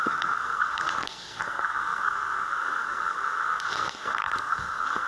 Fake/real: fake